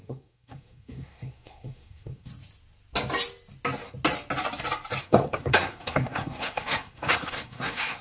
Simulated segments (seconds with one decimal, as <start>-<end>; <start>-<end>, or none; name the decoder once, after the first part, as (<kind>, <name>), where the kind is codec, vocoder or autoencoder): 0.0-2.3 (codec, SNAC); 5.0-8.0